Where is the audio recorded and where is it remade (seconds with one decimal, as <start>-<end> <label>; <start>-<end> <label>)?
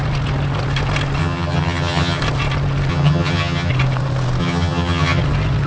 0.0-1.2 recorded; 1.2-2.2 remade; 2.2-2.9 recorded; 2.9-3.7 remade; 3.7-4.4 recorded; 4.4-5.2 remade; 5.2-5.7 recorded